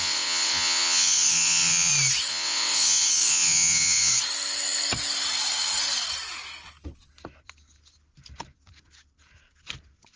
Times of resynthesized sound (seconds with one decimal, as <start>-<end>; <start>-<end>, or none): 0.0-1.9; 2.3-4.1